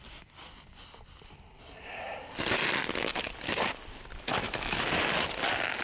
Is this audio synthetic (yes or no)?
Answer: no